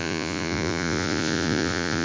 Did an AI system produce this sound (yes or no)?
yes